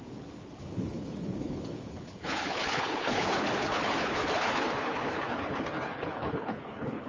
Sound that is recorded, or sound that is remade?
remade